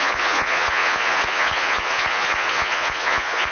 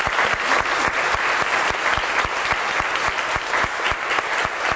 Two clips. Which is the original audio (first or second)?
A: second